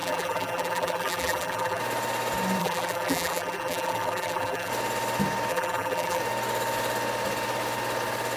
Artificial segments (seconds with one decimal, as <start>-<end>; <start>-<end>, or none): 0.0-1.8; 2.6-4.7; 5.5-6.2

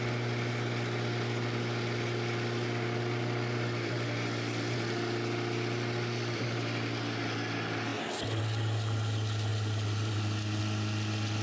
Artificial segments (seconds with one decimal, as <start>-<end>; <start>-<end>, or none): 9.5-10.6